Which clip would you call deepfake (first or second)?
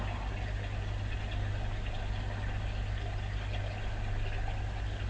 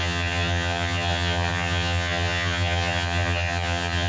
second